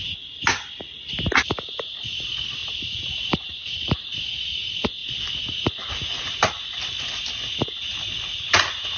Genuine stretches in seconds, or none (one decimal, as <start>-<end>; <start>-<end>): 0.0-9.0

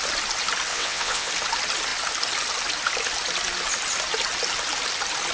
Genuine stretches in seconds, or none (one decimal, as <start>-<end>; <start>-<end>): 0.0-0.7; 1.3-5.3

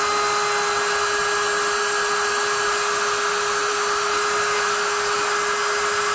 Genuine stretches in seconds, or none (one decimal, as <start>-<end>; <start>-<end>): 0.0-6.1

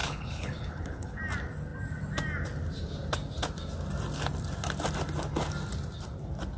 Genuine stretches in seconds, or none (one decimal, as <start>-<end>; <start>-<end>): 1.2-6.6

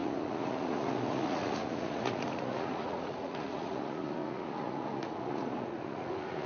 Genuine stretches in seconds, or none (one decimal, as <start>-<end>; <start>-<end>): none

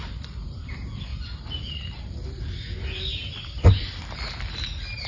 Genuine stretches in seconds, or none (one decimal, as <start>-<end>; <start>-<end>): 0.7-5.1

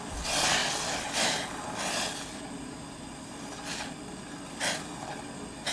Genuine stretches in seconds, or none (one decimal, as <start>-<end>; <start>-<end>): 0.0-5.7

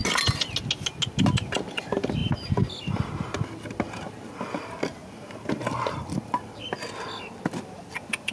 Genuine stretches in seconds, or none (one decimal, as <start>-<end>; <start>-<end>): 0.0-8.3